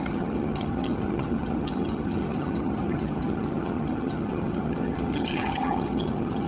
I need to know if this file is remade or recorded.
remade